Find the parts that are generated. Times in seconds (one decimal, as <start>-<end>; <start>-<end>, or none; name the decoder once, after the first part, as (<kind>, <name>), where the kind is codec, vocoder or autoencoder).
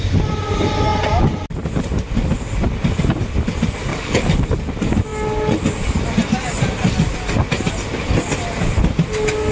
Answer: 3.9-4.4 (codec, DAC)